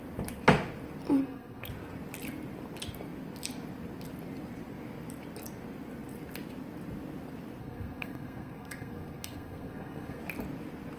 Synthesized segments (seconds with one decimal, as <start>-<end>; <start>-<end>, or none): 1.2-1.7; 7.6-10.2